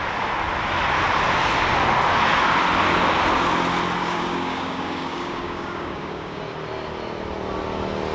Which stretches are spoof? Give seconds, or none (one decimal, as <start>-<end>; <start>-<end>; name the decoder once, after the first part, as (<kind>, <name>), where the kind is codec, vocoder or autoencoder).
4.0-6.4 (codec, DAC)